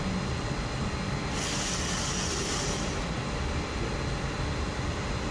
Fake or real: real